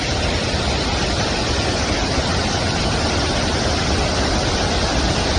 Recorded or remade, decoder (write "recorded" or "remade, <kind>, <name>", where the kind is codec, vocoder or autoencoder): recorded